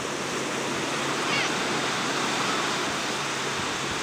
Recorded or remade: recorded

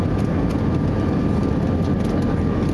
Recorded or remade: recorded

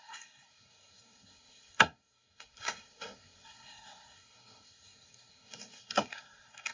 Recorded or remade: remade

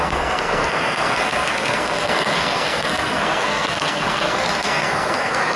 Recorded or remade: remade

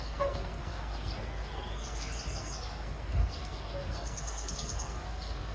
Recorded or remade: remade